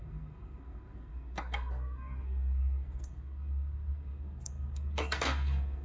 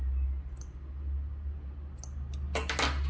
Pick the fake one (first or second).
first